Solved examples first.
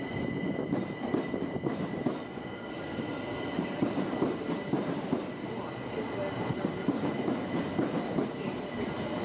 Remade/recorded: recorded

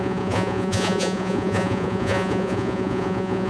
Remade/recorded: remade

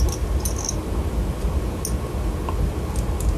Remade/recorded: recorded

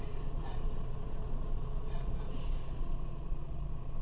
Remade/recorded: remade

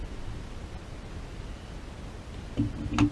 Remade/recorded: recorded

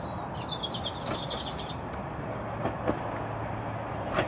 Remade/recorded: recorded